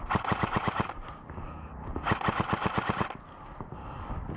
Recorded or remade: recorded